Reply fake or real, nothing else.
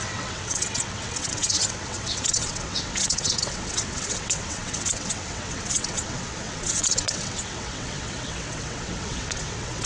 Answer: fake